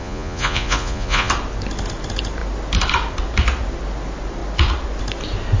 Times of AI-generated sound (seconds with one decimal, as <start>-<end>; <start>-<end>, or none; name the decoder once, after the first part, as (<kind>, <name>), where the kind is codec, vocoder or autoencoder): 0.0-1.3 (vocoder, Vocos)